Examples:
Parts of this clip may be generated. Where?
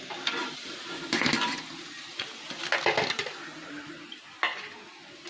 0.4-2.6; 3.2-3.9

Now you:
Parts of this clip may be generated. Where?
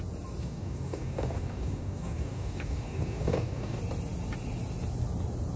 0.4-3.8